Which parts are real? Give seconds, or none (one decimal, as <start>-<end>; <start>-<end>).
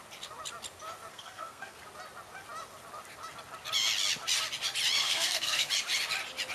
0.0-1.1; 1.8-5.0; 5.7-6.5